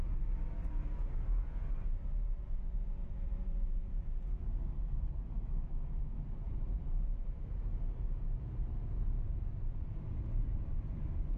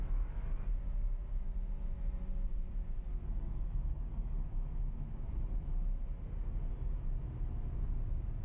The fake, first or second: first